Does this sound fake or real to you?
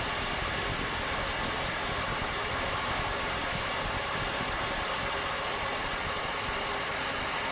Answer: real